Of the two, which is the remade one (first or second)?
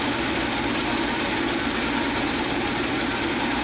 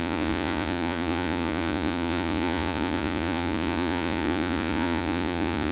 second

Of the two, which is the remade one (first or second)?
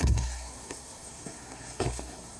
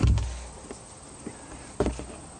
first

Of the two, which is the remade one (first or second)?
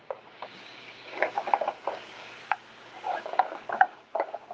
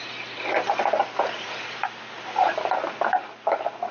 first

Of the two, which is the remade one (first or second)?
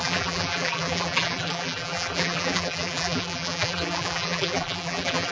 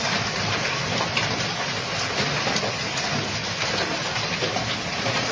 first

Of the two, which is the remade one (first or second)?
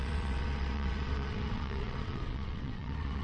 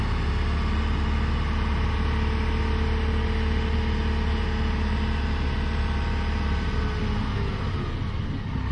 first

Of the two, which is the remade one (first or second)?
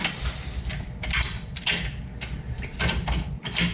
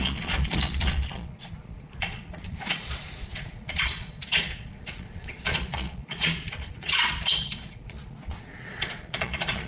second